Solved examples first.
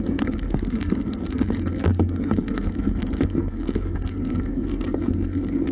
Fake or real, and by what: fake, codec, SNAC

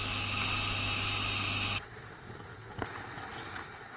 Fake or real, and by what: real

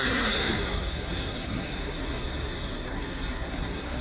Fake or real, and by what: fake, codec, SNAC